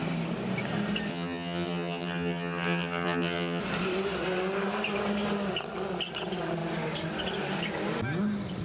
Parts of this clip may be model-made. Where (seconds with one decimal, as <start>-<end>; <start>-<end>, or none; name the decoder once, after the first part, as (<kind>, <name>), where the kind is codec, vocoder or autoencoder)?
1.1-3.6 (vocoder, HiFi-GAN)